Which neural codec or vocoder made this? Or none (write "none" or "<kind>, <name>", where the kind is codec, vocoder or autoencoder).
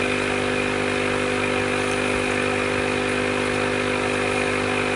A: none